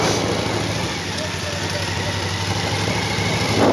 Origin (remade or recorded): recorded